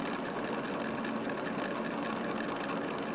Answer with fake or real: real